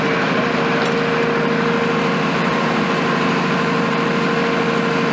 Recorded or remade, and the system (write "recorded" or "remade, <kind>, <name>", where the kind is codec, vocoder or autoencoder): recorded